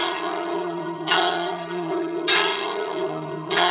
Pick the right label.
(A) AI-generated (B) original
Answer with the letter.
A